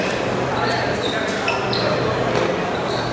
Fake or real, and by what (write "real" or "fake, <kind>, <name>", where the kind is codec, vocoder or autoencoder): fake, vocoder, BigVGAN v2